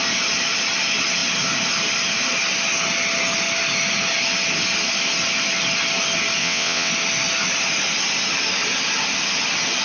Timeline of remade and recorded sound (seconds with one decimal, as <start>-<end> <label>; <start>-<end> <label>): 0.0-6.4 recorded; 6.4-6.9 remade; 6.9-9.8 recorded